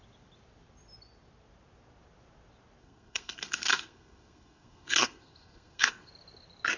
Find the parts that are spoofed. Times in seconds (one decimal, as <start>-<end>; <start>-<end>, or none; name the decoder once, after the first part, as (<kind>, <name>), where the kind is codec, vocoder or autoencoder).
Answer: 2.8-6.1 (codec, SNAC)